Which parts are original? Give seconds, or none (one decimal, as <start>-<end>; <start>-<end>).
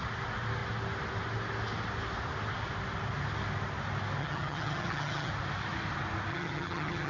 0.0-4.2; 5.3-6.3